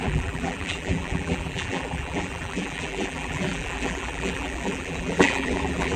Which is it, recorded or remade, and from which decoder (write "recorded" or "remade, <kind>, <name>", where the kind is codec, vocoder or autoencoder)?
remade, vocoder, BigVGAN v2